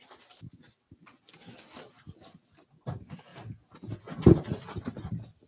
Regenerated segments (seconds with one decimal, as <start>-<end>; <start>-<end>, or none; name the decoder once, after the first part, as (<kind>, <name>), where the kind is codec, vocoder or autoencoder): none